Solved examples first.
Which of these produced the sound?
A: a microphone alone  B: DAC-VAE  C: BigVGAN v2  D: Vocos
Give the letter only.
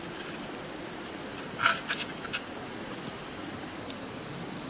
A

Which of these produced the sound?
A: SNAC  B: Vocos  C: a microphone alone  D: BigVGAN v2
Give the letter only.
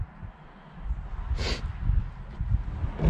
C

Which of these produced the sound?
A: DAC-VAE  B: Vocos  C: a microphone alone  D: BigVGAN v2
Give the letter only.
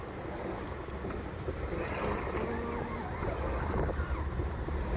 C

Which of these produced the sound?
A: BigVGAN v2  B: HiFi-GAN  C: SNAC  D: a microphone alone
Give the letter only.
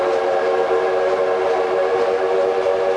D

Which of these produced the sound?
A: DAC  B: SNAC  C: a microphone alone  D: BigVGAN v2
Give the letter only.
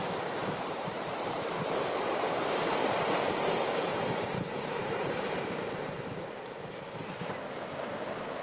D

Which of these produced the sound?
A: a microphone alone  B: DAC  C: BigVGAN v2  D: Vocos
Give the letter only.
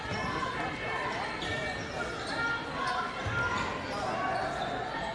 A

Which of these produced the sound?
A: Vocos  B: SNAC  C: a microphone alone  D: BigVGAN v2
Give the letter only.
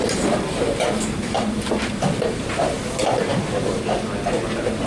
C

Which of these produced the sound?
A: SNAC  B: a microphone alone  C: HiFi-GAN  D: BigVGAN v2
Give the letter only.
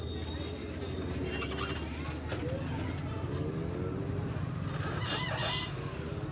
B